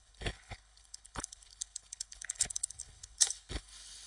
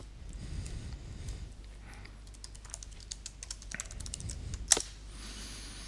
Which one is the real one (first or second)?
second